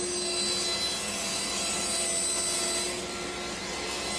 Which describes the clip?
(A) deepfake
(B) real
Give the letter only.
B